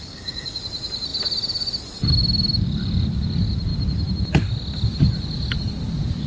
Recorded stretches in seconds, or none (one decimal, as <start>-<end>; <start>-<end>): 0.6-6.3